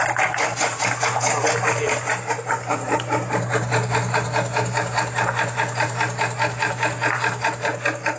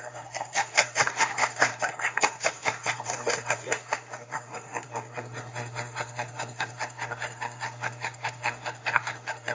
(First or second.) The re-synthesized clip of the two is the second